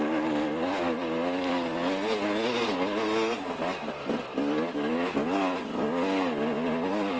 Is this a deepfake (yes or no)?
no